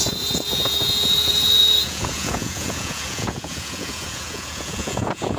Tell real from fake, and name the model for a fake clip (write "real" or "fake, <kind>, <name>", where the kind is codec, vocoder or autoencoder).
fake, vocoder, Vocos